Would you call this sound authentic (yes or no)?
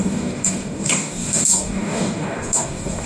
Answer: no